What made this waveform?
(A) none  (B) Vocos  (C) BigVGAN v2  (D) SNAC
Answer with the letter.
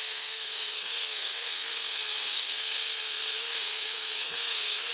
D